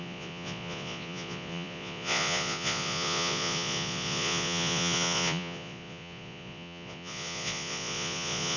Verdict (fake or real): fake